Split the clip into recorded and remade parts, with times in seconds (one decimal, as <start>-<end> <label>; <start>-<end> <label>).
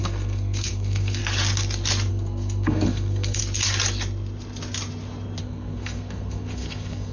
0.0-1.2 remade; 1.2-2.1 recorded; 2.1-3.4 remade; 3.4-5.4 recorded; 5.4-7.1 remade